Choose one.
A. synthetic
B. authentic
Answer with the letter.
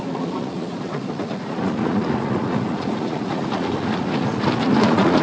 A